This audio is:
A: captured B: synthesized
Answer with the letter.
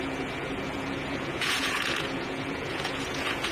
B